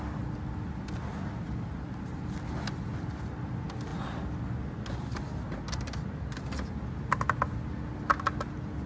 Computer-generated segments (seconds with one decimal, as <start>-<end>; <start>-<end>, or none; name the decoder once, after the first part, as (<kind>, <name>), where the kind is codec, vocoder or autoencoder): none